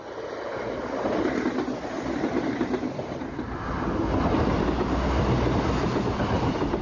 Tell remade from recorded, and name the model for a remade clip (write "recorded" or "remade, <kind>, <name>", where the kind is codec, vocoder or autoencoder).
recorded